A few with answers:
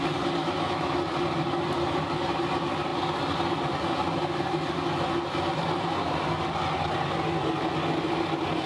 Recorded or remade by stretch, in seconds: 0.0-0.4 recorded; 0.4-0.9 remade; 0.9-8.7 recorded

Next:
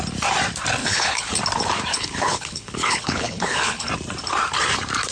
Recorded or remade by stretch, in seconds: 0.0-0.8 recorded; 0.8-1.4 remade; 1.4-1.9 recorded; 1.9-3.9 remade; 3.9-5.1 recorded

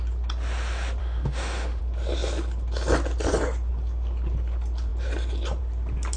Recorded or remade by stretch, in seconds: 0.0-1.0 recorded; 1.0-1.8 remade; 1.8-6.2 recorded